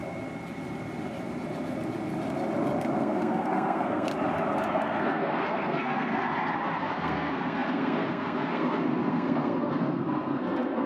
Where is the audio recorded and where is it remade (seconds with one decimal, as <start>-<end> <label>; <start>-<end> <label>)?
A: 0.0-3.0 recorded; 3.0-4.1 remade; 4.1-4.7 recorded; 4.7-6.1 remade; 6.1-6.8 recorded; 6.8-10.9 remade